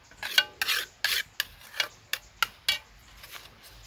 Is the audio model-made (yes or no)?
no